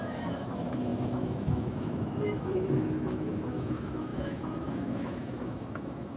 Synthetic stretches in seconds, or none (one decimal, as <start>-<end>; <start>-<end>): 0.0-6.2